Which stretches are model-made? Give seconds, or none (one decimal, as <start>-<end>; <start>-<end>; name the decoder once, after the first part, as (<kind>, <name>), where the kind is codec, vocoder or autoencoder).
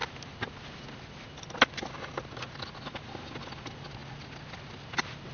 none